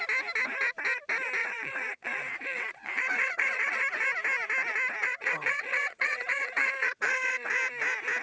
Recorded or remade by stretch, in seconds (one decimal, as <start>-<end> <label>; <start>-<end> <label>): 0.0-1.4 recorded; 1.4-3.8 remade; 3.8-5.0 recorded; 5.0-7.5 remade; 7.5-8.2 recorded